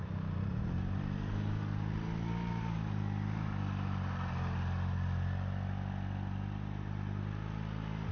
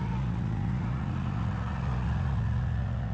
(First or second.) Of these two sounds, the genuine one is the first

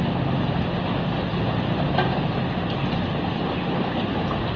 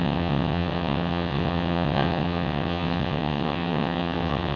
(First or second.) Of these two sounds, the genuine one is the first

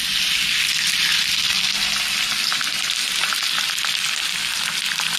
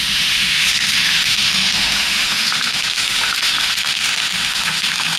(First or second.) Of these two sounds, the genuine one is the first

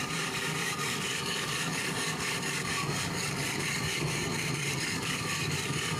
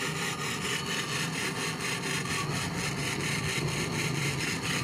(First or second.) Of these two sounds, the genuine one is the second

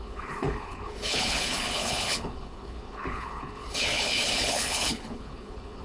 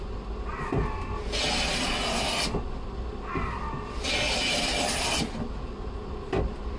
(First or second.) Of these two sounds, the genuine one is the second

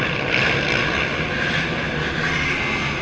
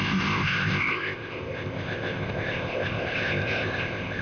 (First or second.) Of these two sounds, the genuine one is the first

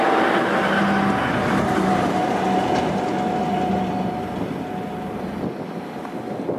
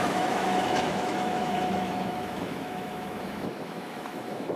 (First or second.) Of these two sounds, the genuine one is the first